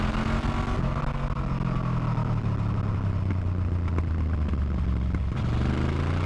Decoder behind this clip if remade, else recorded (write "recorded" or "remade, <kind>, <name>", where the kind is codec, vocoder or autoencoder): recorded